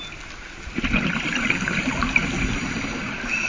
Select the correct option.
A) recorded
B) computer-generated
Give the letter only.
A